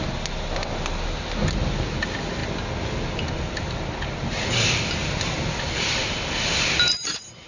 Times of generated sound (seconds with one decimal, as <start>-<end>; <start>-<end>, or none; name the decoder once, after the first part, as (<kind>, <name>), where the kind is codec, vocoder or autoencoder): none